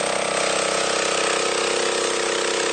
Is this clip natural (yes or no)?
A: yes